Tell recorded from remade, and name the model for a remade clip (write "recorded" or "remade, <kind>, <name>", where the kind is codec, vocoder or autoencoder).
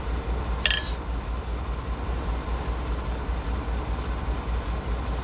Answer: recorded